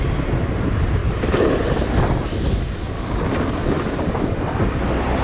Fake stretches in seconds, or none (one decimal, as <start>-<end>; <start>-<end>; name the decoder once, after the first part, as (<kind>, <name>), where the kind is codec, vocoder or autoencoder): none